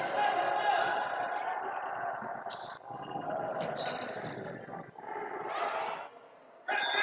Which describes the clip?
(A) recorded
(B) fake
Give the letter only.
A